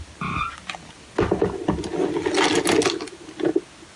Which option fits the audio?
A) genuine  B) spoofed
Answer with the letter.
A